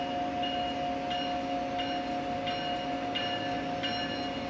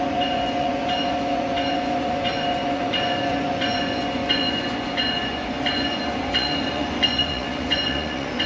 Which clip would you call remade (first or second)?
second